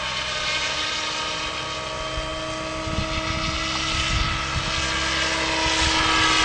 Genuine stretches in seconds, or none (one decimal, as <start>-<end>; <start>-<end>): 0.0-6.4